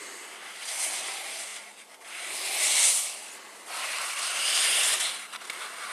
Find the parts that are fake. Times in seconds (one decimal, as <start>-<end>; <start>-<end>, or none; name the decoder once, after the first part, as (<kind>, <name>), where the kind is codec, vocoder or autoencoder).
none